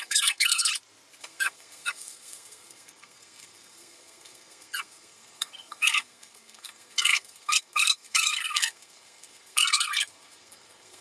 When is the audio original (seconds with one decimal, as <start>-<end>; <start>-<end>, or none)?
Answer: 0.7-1.2